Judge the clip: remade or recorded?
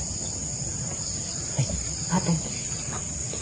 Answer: recorded